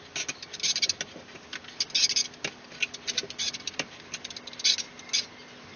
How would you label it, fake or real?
real